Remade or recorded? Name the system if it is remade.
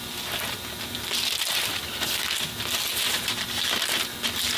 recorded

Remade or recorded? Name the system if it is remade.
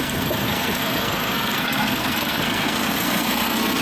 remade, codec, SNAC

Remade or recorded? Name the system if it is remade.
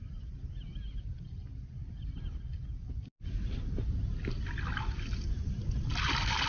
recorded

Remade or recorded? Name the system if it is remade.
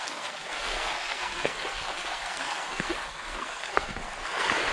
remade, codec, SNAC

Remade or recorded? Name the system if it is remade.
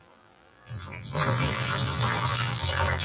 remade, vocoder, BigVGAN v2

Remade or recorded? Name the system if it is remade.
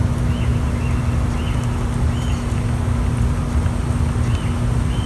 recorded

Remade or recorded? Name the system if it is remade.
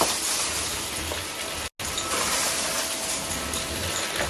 recorded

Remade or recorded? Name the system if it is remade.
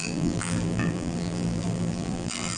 remade, vocoder, BigVGAN v2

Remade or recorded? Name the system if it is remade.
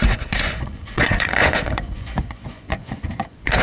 remade, vocoder, Vocos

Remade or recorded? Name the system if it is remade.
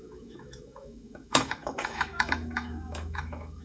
remade, autoencoder, DAC-VAE